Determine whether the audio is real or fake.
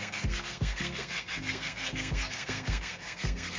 fake